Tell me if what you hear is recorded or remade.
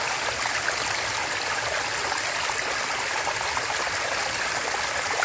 recorded